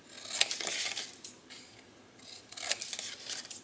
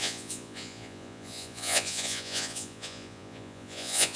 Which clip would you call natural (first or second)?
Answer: first